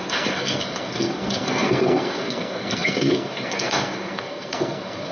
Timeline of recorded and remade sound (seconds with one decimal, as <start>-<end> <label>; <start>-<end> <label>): 0.0-5.1 remade